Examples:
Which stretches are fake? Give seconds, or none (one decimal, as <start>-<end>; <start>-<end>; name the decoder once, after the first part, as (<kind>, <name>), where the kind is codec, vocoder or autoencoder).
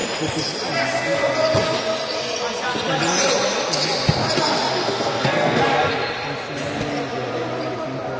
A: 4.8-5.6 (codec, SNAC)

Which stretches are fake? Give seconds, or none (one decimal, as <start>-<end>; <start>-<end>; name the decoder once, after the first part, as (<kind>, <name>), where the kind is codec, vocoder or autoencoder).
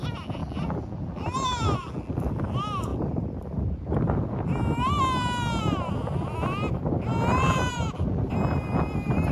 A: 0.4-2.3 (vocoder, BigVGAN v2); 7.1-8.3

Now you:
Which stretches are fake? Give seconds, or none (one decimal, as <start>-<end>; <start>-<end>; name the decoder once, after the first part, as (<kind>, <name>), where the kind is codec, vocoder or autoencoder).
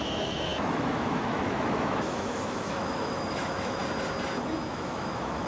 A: 0.0-3.8 (autoencoder, DAC-VAE); 4.7-5.5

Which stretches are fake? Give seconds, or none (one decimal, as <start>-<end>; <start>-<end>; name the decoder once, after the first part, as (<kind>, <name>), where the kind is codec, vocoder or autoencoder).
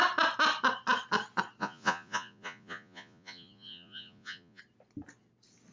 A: 1.6-4.6 (vocoder, Vocos)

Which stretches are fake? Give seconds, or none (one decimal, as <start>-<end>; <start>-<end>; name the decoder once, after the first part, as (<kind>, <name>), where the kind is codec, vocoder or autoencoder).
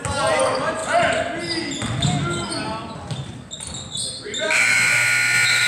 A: 4.7-5.7 (autoencoder, DAC-VAE)